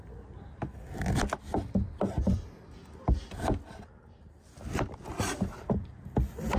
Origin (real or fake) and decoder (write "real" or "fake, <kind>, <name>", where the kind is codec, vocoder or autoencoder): real